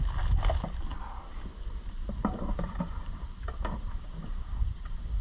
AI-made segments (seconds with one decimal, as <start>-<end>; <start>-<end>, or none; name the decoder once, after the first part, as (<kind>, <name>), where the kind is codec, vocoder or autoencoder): none